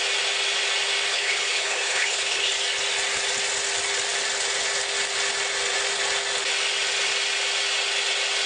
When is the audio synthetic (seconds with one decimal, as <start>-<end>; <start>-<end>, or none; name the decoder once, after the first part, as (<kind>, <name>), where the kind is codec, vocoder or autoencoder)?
1.1-2.5 (codec, HILCodec)